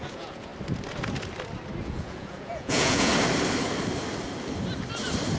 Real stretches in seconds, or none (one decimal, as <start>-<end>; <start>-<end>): 0.5-1.8; 3.1-5.4